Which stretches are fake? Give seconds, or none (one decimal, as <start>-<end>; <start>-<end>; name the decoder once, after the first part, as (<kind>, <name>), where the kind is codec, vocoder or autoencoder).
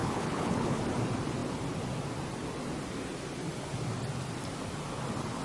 0.0-0.8 (codec, HILCodec)